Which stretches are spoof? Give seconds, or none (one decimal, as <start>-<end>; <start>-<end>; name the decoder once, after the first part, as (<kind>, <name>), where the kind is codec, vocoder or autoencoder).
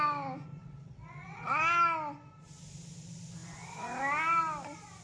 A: 0.6-1.6 (vocoder, WaveNeXt)